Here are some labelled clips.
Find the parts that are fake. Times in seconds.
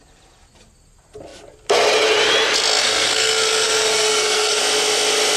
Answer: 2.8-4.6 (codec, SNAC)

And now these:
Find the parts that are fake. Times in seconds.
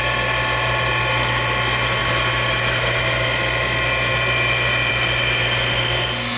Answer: none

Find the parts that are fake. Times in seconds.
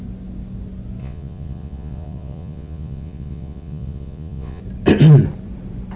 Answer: 1.0-4.6 (vocoder, Vocos)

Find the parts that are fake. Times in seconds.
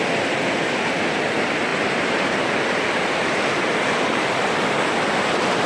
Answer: 1.7-4.8 (vocoder, BigVGAN v2)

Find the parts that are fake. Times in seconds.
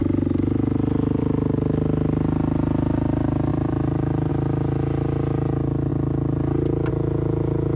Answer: 3.5-4.3 (vocoder, BigVGAN v2)